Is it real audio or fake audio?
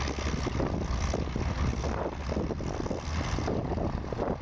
real